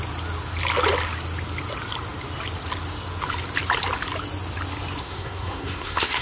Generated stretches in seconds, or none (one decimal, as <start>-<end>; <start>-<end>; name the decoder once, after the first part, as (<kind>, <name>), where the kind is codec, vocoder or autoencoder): 5.0-6.2 (codec, SNAC)